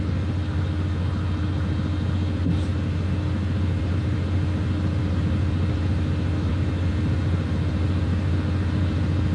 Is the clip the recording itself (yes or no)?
yes